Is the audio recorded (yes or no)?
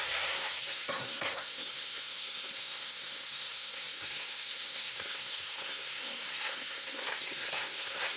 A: no